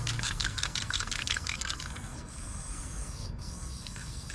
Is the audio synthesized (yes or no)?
yes